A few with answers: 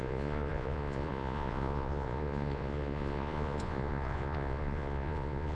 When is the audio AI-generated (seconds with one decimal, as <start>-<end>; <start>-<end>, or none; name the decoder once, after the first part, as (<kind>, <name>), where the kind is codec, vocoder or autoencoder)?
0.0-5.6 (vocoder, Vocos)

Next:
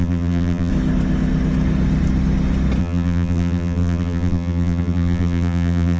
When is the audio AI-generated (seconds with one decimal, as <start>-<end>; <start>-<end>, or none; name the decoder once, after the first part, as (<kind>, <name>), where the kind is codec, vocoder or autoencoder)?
0.0-0.7 (vocoder, BigVGAN v2); 2.8-6.0

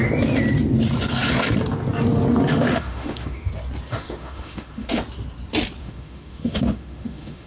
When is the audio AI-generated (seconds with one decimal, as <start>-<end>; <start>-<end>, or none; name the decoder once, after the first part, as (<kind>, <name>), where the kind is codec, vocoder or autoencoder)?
2.5-3.5 (autoencoder, DAC-VAE); 3.9-5.0; 5.8-7.5

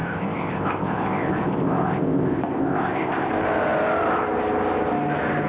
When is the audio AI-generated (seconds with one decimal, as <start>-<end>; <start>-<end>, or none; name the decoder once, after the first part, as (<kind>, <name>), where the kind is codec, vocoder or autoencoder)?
0.0-3.3 (codec, ZipCodec)

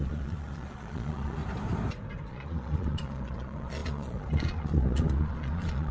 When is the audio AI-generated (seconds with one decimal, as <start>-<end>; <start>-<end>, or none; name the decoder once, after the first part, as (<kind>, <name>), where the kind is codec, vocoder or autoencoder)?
0.0-1.4 (vocoder, Vocos); 2.3-5.9

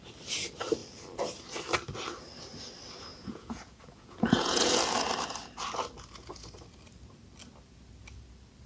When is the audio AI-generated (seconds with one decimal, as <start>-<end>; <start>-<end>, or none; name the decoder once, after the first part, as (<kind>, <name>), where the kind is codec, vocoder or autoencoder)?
3.1-4.8 (vocoder, Vocos)

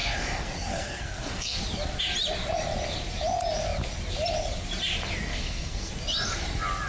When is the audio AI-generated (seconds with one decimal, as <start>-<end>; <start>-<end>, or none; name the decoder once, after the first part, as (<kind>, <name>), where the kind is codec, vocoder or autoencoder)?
0.0-1.6 (codec, SNAC); 5.3-5.9

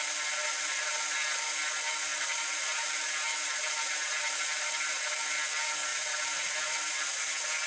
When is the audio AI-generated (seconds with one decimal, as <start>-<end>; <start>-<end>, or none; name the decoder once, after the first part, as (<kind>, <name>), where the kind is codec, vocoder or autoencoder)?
2.1-5.0 (vocoder, BigVGAN v2); 5.9-7.2